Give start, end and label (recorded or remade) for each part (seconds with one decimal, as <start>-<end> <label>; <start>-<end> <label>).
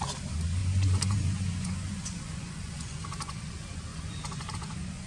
0.0-0.6 recorded; 0.6-3.5 remade; 3.5-3.9 recorded; 3.9-5.1 remade